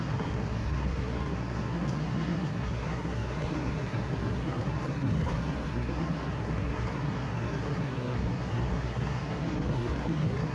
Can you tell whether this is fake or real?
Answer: fake